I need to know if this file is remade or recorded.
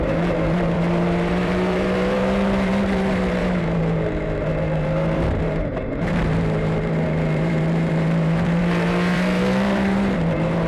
remade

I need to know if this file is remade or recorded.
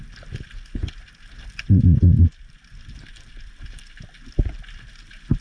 recorded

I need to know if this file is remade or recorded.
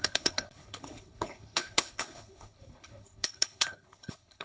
remade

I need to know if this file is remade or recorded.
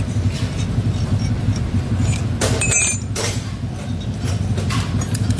remade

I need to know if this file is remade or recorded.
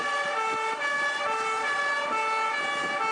recorded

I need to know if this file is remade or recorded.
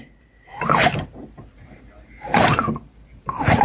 remade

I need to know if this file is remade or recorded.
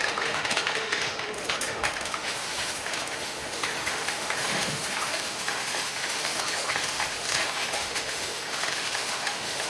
remade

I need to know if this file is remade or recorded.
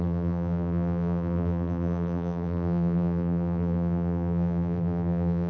remade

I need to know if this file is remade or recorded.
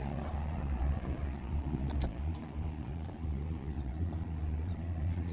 remade